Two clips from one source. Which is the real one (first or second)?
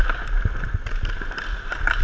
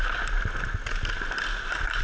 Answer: second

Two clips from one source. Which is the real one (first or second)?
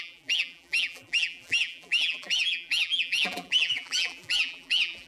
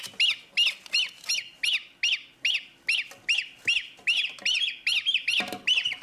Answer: second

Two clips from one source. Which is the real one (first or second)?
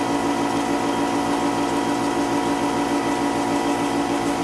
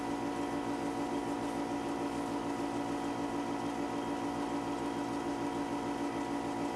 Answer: first